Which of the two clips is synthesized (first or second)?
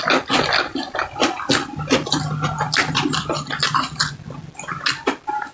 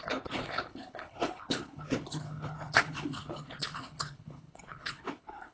second